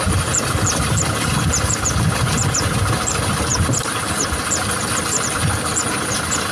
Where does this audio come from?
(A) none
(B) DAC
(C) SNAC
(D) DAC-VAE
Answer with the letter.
A